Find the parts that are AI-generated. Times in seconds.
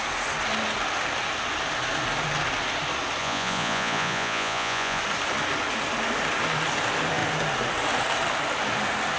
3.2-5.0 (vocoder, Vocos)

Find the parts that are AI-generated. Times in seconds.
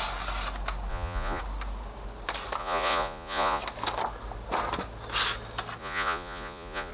0.9-1.4 (vocoder, Vocos); 2.6-3.6; 5.8-6.9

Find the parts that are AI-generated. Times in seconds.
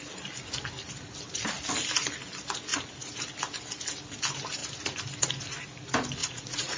2.7-3.2 (vocoder, Vocos); 6.2-6.8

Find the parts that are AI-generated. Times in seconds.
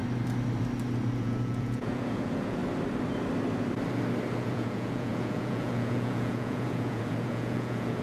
1.2-2.6 (vocoder, Vocos); 4.4-8.0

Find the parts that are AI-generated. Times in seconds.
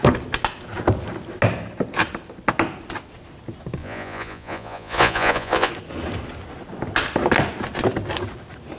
3.8-5.7 (vocoder, Vocos)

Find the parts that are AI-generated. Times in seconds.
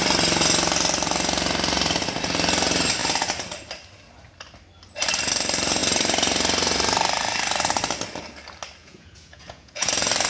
8.8-9.9 (vocoder, Vocos)